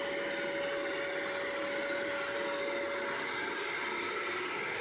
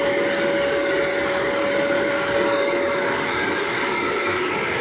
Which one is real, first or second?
first